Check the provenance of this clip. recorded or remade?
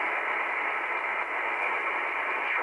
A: recorded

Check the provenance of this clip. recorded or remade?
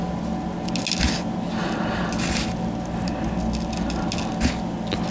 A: recorded